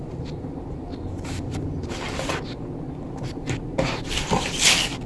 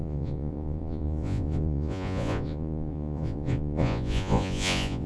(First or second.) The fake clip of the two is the second